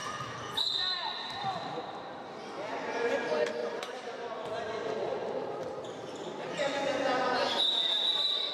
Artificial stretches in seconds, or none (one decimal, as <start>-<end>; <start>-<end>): 0.0-1.8; 3.6-4.3; 5.2-5.7; 7.5-8.5